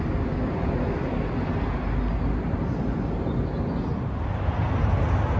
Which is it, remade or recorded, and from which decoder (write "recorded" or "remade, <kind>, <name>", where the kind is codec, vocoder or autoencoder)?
recorded